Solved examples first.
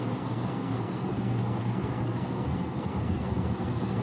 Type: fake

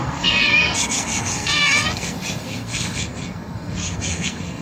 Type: fake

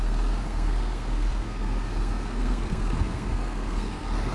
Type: fake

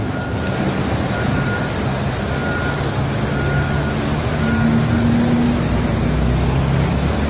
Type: real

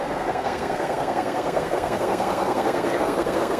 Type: fake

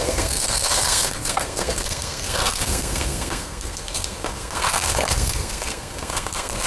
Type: fake